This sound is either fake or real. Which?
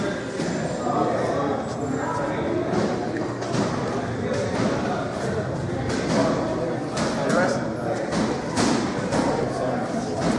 real